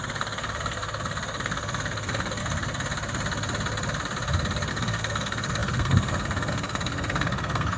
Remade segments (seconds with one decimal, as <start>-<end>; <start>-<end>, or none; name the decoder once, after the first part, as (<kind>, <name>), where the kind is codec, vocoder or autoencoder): 0.0-2.4 (codec, SNAC); 4.7-7.8